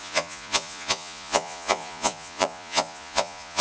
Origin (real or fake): fake